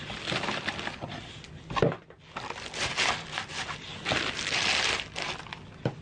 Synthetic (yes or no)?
no